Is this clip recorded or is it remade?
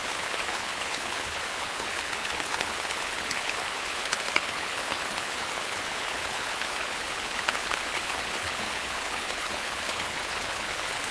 remade